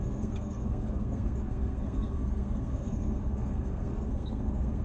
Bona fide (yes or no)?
no